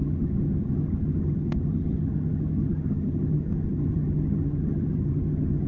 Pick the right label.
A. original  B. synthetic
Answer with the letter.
B